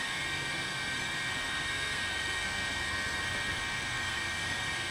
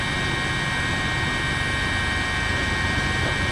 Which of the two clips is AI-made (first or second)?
first